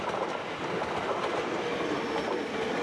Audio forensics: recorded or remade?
recorded